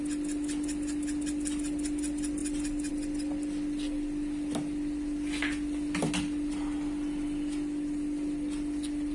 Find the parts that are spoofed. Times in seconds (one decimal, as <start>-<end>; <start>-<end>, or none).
none

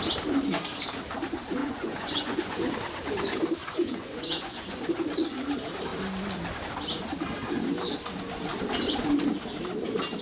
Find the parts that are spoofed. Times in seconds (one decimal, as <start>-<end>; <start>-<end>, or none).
1.6-2.7; 3.6-4.8

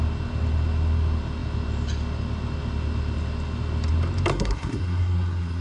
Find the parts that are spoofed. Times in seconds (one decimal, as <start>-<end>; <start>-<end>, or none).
4.3-5.6

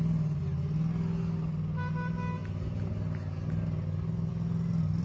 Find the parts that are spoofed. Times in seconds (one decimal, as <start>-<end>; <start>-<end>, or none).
none